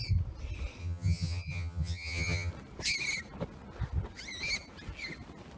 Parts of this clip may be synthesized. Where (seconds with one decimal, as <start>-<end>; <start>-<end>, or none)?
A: 0.8-2.5